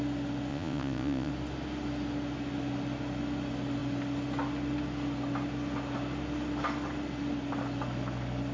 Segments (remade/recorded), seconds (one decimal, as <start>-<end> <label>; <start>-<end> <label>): 0.0-0.5 recorded; 0.5-1.3 remade; 1.3-8.5 recorded